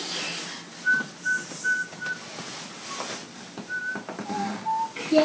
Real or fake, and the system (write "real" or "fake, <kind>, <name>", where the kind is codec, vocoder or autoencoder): real